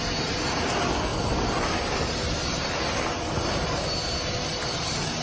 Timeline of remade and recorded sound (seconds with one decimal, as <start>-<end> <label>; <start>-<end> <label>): 0.0-5.2 recorded